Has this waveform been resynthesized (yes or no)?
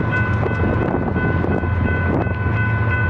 no